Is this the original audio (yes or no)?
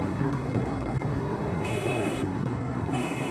no